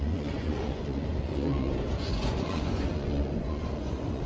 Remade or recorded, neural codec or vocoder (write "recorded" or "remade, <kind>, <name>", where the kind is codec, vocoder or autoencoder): remade, vocoder, Vocos